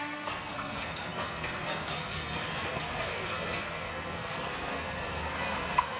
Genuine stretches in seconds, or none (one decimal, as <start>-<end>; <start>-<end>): none